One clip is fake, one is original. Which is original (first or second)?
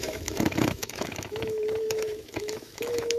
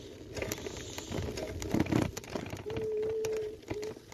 second